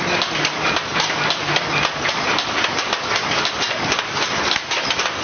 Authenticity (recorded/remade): recorded